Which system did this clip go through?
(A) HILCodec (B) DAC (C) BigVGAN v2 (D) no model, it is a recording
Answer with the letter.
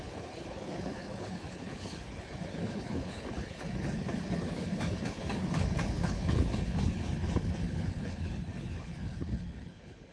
A